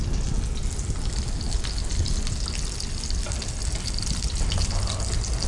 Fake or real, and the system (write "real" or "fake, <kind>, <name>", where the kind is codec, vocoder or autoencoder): real